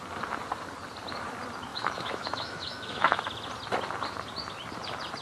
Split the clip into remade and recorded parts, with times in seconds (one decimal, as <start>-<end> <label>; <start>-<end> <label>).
0.0-1.7 recorded; 1.7-3.2 remade; 3.2-5.2 recorded